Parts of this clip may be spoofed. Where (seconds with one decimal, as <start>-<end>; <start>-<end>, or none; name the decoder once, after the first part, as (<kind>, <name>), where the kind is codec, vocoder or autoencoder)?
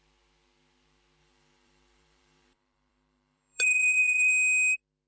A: 1.2-4.3 (vocoder, BigVGAN v2)